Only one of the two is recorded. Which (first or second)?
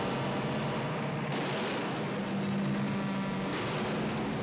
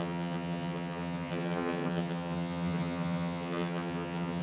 first